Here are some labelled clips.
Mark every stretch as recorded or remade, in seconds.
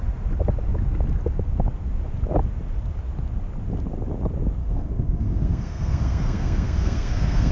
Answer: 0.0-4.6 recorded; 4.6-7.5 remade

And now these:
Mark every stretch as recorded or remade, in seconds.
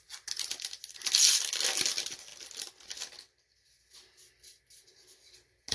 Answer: 0.0-5.7 recorded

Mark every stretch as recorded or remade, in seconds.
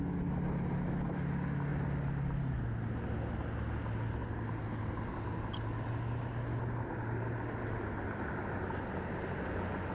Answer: 0.0-9.9 recorded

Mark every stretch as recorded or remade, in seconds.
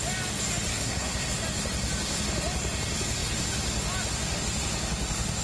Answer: 0.0-0.7 recorded; 0.7-1.3 remade; 1.3-5.4 recorded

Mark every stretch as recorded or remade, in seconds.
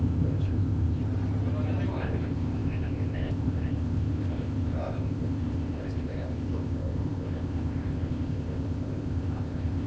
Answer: 0.0-1.0 remade; 1.0-1.9 recorded; 1.9-9.9 remade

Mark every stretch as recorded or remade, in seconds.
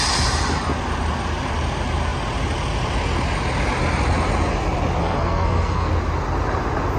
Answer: 0.0-5.0 recorded; 5.0-5.9 remade; 5.9-7.0 recorded